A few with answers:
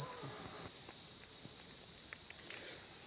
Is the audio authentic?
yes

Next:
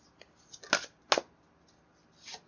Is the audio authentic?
yes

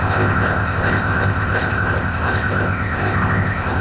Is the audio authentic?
no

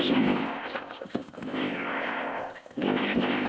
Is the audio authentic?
no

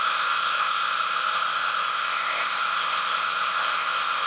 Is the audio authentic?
no